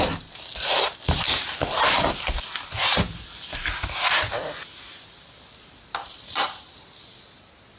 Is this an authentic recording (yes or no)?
yes